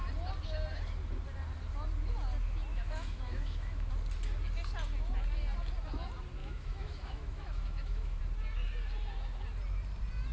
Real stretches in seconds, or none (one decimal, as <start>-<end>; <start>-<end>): 0.0-2.7; 3.9-6.4; 8.2-10.3

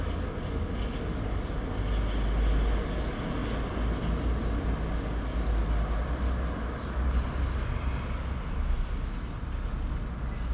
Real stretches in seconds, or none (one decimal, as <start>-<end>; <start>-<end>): 0.0-10.5

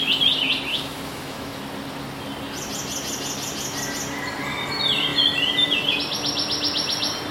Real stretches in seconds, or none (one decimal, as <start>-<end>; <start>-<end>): 0.0-0.7; 1.6-7.3

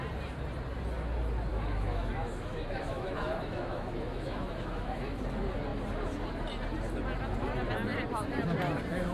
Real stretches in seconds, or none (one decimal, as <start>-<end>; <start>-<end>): 0.0-1.5; 5.2-9.1

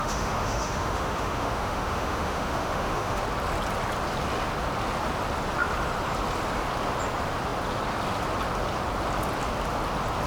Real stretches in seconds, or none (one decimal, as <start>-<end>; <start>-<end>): 3.2-10.3